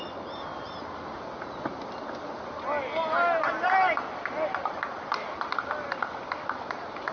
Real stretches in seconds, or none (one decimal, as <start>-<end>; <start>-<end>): 0.0-7.1